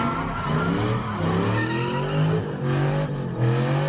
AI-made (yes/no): no